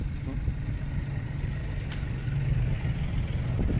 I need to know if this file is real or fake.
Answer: real